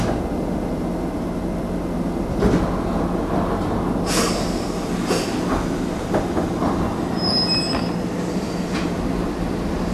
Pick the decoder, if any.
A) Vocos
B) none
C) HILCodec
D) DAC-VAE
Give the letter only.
B